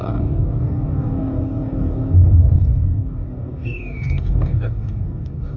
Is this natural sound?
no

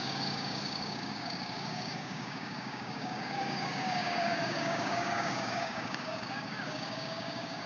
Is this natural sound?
no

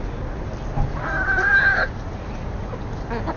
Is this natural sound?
yes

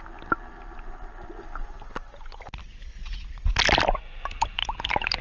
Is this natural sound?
yes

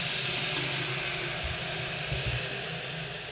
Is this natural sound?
yes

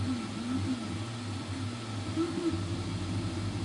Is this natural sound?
yes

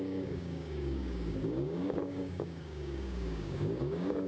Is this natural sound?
no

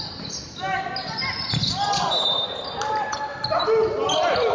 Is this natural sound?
yes